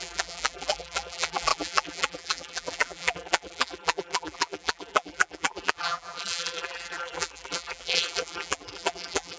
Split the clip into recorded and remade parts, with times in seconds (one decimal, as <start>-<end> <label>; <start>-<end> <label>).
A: 0.0-9.4 remade